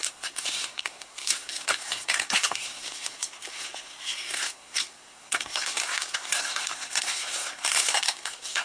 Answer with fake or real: fake